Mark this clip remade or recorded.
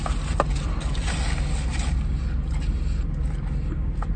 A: recorded